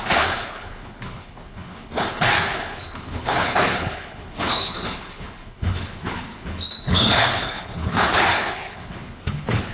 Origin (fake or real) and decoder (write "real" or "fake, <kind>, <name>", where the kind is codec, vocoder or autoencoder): fake, codec, HILCodec